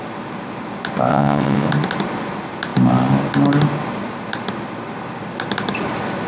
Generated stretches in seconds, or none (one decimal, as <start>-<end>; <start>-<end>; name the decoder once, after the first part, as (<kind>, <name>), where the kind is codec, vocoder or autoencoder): 1.1-1.7 (vocoder, WaveNeXt)